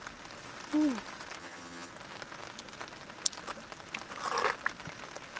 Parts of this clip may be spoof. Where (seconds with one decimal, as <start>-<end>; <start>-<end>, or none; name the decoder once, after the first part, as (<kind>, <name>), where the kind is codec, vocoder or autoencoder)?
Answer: 1.4-1.9 (vocoder, HiFi-GAN)